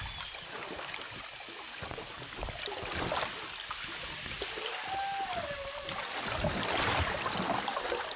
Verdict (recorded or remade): recorded